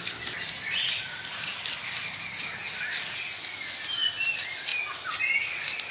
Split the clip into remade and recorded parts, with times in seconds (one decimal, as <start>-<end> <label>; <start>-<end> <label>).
0.0-5.9 recorded